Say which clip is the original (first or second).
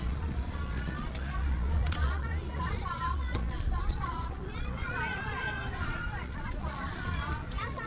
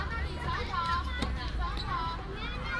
second